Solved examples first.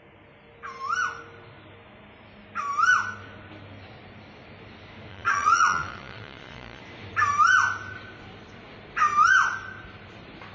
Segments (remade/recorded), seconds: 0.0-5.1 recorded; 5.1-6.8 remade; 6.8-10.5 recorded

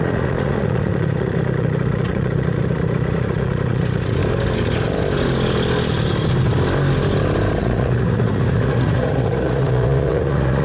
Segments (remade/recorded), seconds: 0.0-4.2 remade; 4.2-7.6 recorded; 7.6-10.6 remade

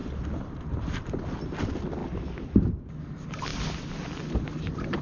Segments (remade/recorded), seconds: 0.0-5.0 recorded